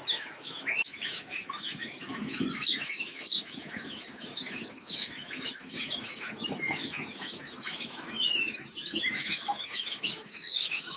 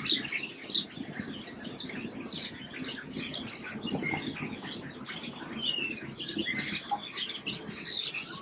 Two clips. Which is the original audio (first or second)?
second